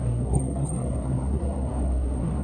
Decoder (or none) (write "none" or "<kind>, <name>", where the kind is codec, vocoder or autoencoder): codec, SNAC